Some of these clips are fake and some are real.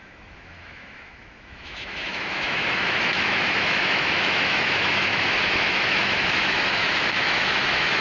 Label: fake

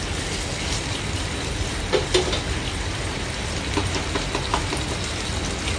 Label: real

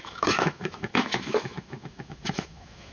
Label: fake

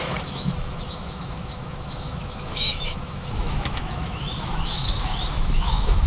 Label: fake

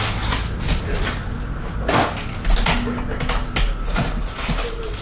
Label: real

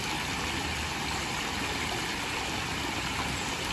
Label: real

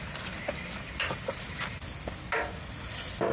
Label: real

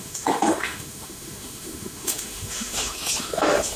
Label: fake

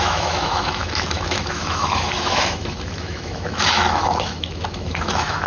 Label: fake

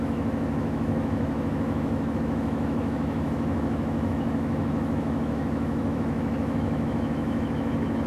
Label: fake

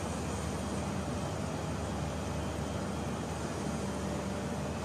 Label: real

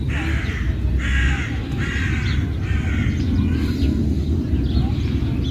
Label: real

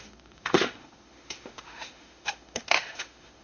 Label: fake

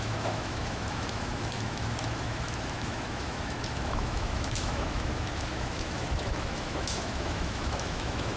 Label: fake